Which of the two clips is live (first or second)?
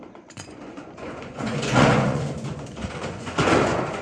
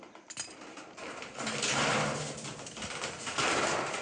second